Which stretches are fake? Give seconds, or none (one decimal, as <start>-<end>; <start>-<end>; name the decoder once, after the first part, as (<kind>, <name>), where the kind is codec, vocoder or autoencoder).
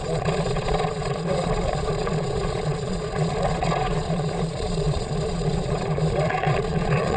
0.0-7.2 (vocoder, Vocos)